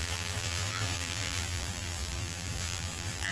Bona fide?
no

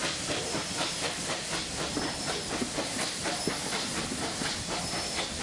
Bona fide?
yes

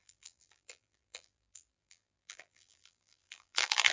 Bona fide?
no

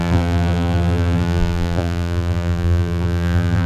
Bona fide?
no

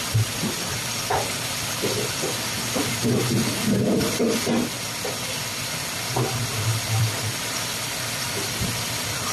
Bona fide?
yes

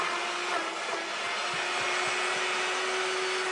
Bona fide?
yes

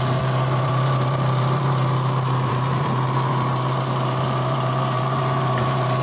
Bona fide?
no